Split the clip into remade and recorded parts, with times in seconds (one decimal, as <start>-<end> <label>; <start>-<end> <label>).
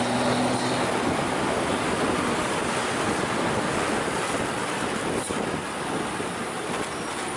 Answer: 0.0-7.4 recorded